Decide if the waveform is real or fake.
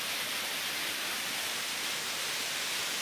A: real